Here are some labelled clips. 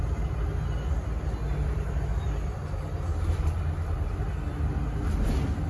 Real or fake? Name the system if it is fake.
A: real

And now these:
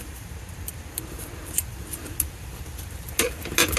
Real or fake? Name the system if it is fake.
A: real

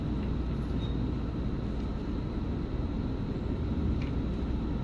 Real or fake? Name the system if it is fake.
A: real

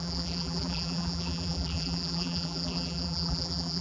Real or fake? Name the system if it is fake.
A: fake, vocoder, BigVGAN v2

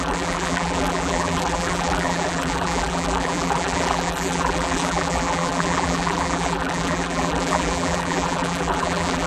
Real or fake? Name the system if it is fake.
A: fake, vocoder, BigVGAN v2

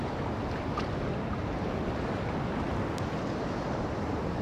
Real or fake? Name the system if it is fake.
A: real